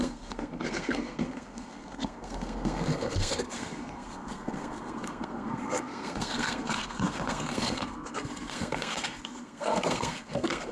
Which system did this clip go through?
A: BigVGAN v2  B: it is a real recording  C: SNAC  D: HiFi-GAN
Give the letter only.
C